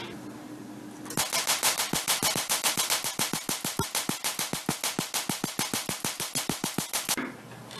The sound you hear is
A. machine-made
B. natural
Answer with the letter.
B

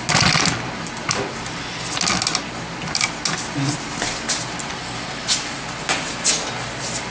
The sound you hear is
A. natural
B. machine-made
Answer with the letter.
A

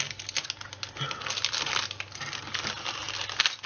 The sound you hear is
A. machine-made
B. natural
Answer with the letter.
B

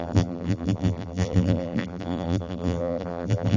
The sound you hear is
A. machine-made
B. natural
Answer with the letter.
A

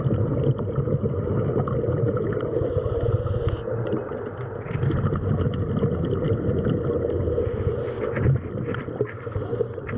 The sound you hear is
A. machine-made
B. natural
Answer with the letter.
B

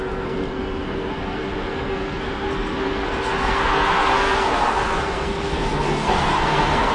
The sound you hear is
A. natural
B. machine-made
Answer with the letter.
B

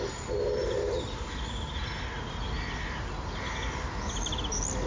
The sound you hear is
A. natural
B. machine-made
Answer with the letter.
A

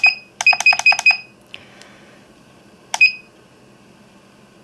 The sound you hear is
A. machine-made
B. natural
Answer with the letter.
B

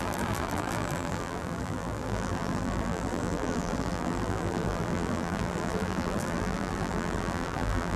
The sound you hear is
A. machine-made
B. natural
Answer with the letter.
A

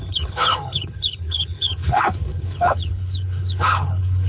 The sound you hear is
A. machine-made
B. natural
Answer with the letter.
A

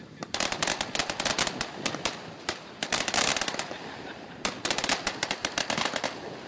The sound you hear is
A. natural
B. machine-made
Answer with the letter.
B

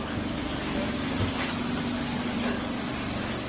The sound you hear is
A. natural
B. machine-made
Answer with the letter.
A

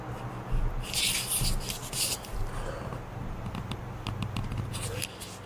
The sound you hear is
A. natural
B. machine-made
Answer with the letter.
A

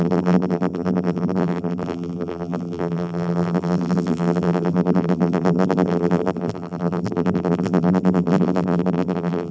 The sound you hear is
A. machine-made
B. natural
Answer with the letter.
A